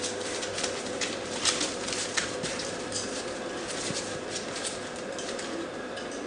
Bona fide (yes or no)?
yes